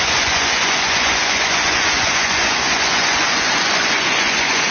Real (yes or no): no